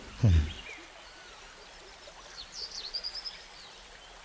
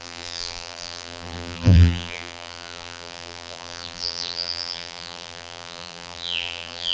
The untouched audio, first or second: first